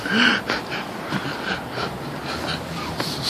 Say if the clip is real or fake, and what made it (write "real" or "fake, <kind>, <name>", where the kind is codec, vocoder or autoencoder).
real